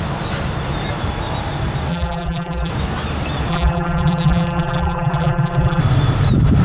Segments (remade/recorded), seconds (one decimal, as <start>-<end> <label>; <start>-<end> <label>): 0.0-1.9 recorded; 1.9-2.7 remade; 2.7-3.5 recorded; 3.5-5.8 remade; 5.8-6.6 recorded